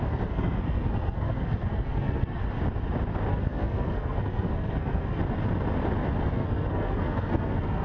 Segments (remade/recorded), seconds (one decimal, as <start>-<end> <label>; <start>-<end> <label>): 0.0-2.4 remade; 2.4-3.3 recorded; 3.3-5.2 remade; 5.2-6.2 recorded; 6.2-7.8 remade